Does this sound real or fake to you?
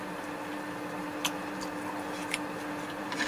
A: real